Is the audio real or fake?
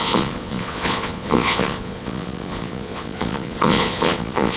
fake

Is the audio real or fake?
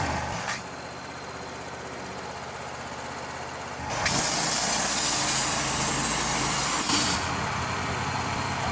real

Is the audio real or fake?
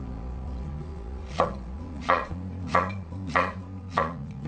fake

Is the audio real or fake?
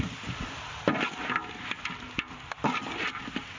real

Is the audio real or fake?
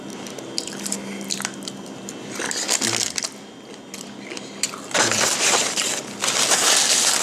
real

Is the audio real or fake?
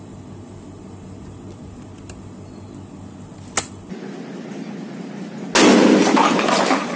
real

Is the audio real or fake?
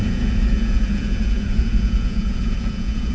fake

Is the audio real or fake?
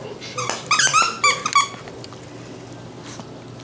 real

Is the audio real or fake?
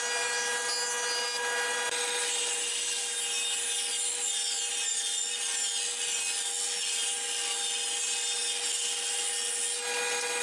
real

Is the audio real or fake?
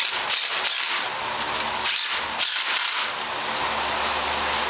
real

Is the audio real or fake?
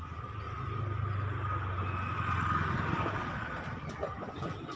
real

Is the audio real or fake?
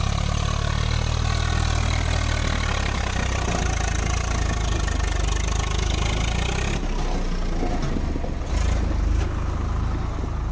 real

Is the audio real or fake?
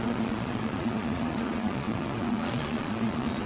fake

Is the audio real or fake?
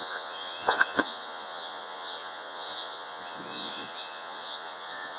fake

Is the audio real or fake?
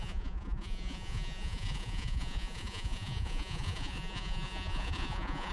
fake